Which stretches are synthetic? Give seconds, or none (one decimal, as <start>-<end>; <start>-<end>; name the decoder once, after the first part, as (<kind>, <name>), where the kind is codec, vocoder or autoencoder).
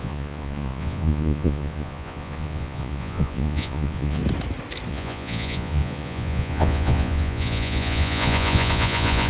0.0-4.2 (vocoder, Vocos); 4.9-9.3